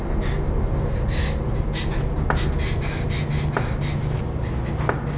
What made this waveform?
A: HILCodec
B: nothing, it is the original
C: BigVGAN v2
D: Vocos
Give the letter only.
B